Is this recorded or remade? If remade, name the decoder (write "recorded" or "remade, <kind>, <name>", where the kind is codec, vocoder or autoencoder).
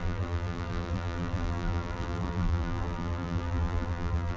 remade, vocoder, BigVGAN v2